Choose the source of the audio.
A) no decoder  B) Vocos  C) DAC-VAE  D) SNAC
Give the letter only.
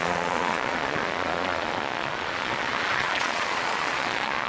B